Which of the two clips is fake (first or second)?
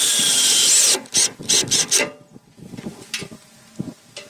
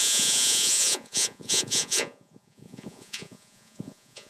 second